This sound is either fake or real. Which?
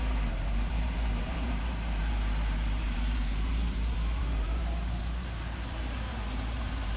fake